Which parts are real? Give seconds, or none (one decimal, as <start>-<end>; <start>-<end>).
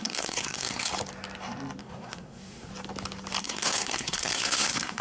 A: 0.9-1.8; 2.7-3.4